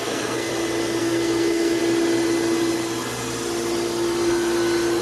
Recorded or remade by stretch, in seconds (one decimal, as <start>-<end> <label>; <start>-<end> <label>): 0.0-0.5 remade; 0.5-1.0 recorded; 1.0-1.8 remade; 1.8-5.0 recorded